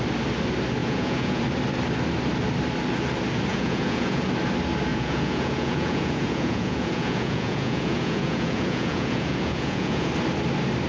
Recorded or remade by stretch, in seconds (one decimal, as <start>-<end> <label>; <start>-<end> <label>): 0.0-0.8 recorded; 0.8-1.4 remade; 1.4-3.5 recorded; 3.5-4.3 remade; 4.3-4.9 recorded; 4.9-10.1 remade; 10.1-10.9 recorded